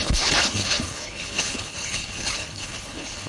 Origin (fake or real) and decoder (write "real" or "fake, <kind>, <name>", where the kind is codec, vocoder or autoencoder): fake, codec, HILCodec